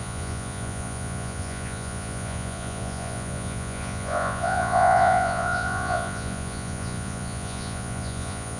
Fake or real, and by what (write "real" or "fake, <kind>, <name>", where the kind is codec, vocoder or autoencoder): fake, vocoder, Vocos